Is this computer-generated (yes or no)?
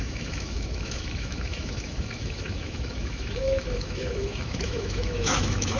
yes